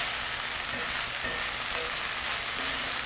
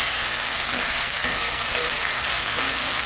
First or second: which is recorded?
first